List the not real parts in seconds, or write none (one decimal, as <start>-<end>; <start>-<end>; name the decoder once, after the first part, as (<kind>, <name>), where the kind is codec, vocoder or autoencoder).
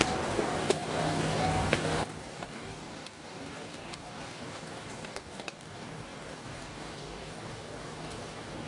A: 0.0-8.7 (codec, DAC)